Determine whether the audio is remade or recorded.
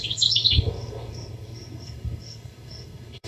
remade